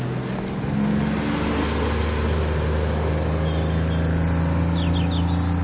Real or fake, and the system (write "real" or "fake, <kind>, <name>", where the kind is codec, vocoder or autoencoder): real